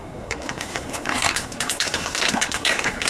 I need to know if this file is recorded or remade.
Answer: remade